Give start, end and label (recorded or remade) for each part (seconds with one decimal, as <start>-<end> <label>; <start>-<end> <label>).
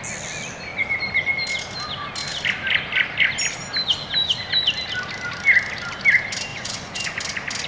0.0-6.5 recorded; 6.5-7.2 remade; 7.2-7.7 recorded